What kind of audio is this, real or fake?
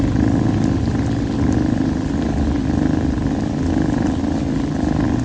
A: real